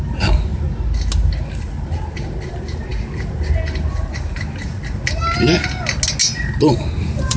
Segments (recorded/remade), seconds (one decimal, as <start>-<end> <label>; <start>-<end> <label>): 0.0-0.5 remade; 0.5-2.5 recorded; 2.5-2.9 remade; 2.9-3.9 recorded; 3.9-4.3 remade; 4.3-7.0 recorded; 7.0-7.4 remade